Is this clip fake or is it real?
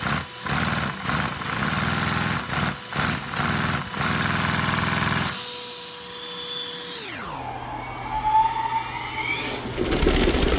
real